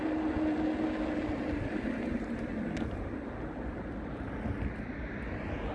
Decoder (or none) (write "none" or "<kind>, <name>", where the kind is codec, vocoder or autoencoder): none